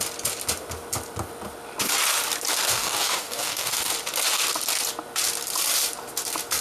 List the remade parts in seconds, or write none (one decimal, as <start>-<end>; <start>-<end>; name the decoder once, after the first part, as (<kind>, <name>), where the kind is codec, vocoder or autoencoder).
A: 2.7-3.9 (codec, DAC)